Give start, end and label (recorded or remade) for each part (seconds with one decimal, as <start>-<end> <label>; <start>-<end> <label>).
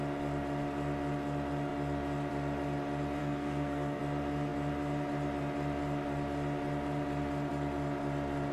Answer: 0.0-3.2 recorded; 3.2-4.0 remade; 4.0-8.5 recorded